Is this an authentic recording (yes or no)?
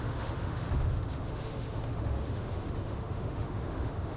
no